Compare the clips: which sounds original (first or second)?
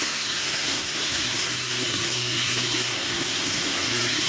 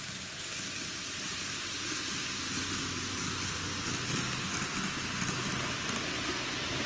second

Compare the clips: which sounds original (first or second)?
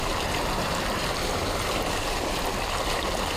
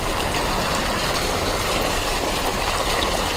second